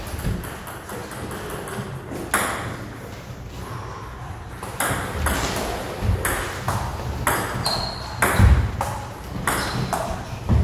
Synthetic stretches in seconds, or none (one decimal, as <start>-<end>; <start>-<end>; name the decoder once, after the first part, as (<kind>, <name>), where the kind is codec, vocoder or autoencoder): none